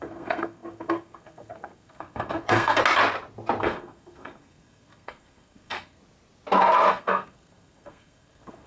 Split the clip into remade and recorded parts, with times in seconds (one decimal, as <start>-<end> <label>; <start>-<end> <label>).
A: 0.0-2.8 remade; 2.8-3.6 recorded; 3.6-6.0 remade; 6.0-6.9 recorded; 6.9-8.7 remade